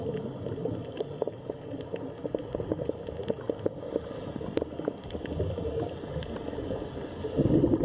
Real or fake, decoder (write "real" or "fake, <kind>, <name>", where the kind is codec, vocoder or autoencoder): real